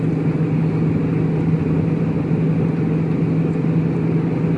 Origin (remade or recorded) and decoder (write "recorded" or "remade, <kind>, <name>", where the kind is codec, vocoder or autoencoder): recorded